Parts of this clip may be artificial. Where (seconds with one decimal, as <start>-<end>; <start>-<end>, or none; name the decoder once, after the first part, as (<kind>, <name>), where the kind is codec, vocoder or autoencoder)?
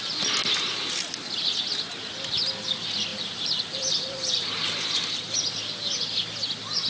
3.1-4.6 (vocoder, BigVGAN v2)